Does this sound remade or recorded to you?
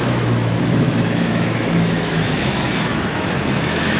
remade